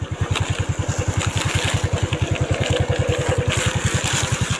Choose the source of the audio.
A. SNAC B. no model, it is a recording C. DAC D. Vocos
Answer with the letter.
B